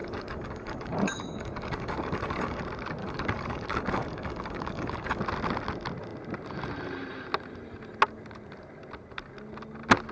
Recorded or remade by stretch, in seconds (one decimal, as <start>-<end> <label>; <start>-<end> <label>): 0.0-2.6 remade; 2.6-3.0 recorded; 3.0-5.2 remade; 5.2-10.1 recorded